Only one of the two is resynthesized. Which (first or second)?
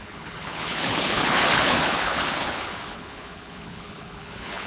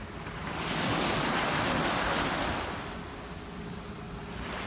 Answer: first